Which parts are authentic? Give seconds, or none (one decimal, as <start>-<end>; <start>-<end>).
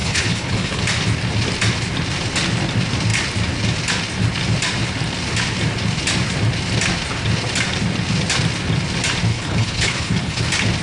0.8-9.3; 10.4-10.8